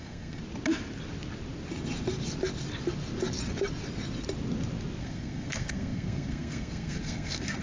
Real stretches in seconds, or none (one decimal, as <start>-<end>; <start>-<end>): 0.4-5.0